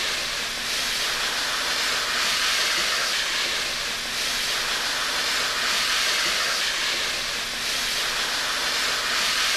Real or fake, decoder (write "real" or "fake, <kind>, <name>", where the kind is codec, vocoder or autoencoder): real